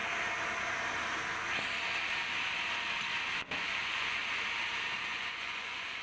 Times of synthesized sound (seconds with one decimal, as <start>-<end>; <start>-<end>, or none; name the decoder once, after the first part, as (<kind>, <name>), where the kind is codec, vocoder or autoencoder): 3.6-4.2 (vocoder, Vocos); 5.1-6.0